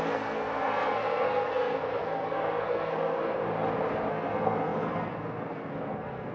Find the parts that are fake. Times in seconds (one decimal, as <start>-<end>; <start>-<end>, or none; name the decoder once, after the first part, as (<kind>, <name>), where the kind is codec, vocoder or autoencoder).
0.0-3.4 (codec, SNAC); 4.1-6.3